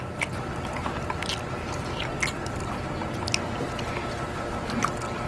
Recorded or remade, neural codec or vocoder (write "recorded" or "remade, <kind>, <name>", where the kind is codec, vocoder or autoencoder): recorded